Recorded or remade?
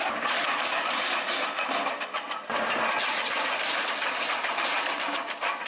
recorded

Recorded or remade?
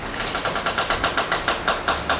recorded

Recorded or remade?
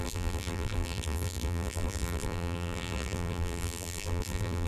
remade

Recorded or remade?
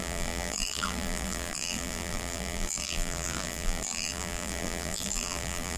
remade